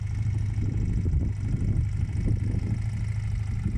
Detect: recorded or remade recorded